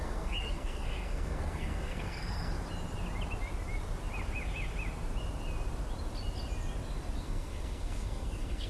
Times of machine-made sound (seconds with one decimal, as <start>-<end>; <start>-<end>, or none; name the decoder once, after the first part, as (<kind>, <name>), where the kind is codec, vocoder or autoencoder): 0.0-2.5 (codec, SNAC); 7.2-8.7

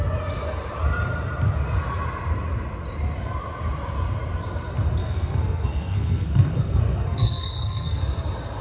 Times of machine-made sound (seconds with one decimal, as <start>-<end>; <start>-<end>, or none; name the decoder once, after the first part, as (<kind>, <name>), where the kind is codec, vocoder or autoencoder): 5.0-8.0 (codec, SNAC)